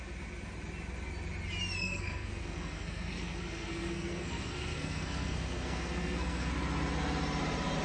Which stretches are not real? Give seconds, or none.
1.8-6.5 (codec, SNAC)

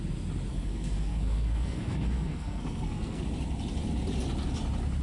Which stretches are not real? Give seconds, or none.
0.5-3.2 (codec, SNAC)

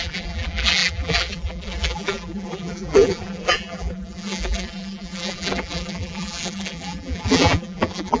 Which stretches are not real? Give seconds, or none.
0.0-8.2 (vocoder, BigVGAN v2)

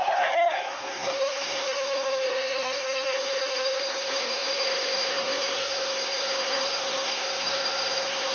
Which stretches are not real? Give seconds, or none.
0.0-8.3 (codec, SNAC)